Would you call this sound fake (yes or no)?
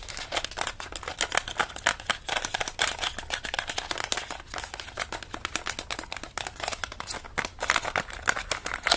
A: no